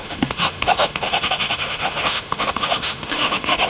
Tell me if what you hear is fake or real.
fake